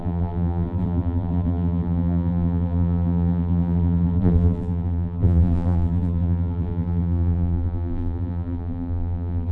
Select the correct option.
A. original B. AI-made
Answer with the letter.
B